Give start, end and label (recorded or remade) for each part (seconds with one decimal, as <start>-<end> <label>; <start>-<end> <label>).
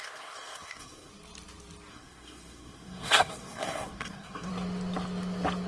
0.0-1.1 remade; 1.1-1.9 recorded; 1.9-4.5 remade; 4.5-5.7 recorded